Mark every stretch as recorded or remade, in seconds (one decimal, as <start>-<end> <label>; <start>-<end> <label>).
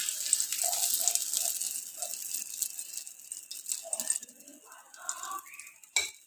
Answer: 0.0-6.3 recorded